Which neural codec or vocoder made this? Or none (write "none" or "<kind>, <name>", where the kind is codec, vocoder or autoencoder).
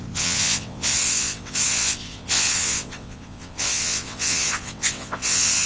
vocoder, WaveNeXt